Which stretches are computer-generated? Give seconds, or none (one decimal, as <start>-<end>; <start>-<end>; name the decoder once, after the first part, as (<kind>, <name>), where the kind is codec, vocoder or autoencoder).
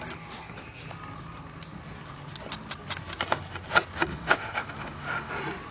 4.1-5.3 (autoencoder, DAC-VAE)